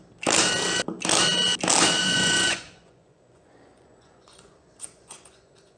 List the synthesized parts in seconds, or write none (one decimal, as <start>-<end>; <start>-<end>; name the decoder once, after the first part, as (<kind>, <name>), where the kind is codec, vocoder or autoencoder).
2.0-5.8 (vocoder, Vocos)